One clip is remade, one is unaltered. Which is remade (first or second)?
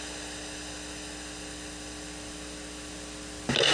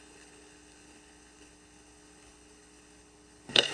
second